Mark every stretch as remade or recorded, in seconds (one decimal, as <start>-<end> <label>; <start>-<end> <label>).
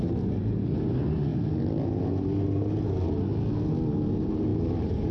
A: 0.0-1.3 remade; 1.3-4.1 recorded; 4.1-5.1 remade